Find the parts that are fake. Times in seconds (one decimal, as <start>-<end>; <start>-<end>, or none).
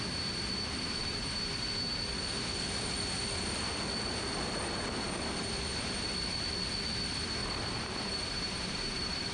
1.0-1.5; 7.4-9.3